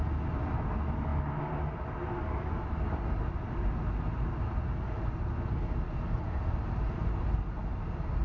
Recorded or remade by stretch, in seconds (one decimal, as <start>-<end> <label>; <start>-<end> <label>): 0.0-8.2 recorded